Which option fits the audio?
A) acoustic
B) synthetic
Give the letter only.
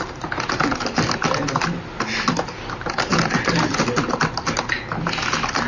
A